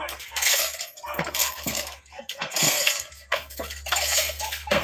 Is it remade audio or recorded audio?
remade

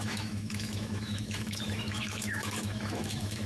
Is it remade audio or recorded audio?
remade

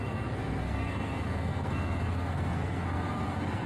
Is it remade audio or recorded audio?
remade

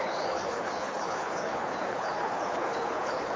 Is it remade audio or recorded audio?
remade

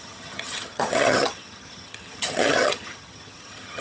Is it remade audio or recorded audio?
remade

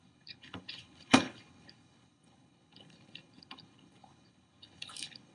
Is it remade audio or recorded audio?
remade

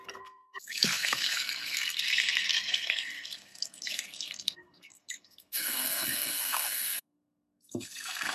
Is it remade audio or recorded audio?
remade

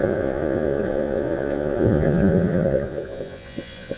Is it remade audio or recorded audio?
remade